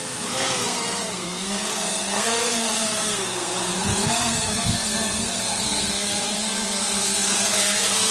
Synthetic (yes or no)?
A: yes